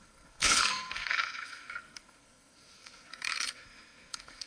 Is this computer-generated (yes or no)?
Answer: yes